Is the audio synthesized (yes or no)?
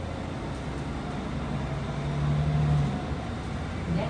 no